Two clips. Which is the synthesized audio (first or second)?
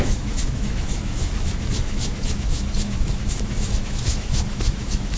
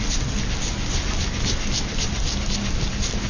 first